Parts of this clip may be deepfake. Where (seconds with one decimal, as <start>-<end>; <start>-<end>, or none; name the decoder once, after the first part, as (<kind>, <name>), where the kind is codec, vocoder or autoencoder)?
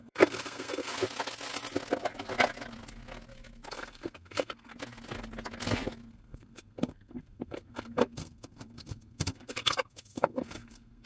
0.0-0.9 (codec, SNAC); 3.7-4.7; 6.1-11.1